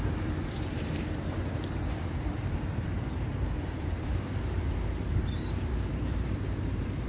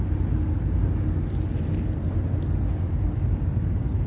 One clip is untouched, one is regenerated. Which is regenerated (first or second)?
first